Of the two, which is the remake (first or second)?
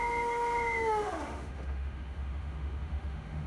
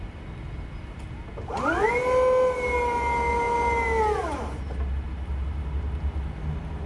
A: first